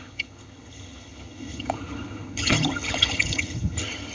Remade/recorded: remade